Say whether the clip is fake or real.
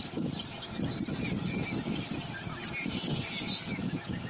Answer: real